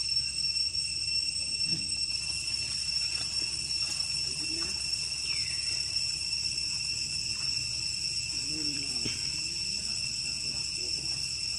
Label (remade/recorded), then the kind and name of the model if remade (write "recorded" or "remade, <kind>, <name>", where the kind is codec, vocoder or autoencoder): remade, vocoder, BigVGAN v2